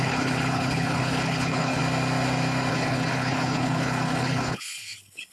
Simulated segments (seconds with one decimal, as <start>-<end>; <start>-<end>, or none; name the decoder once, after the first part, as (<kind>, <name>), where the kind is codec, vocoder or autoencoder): 0.0-1.8 (codec, HILCodec); 2.7-5.3